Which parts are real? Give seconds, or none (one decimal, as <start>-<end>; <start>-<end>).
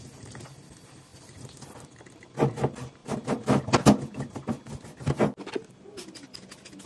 0.0-6.9